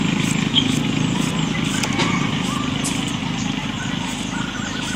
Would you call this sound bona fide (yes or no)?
yes